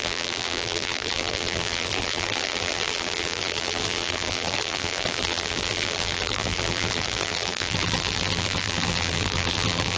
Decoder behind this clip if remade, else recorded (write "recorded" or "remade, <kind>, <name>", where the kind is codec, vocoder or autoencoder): remade, vocoder, BigVGAN v2